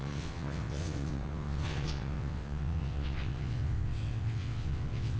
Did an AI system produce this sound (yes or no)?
yes